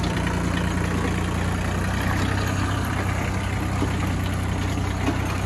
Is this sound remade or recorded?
recorded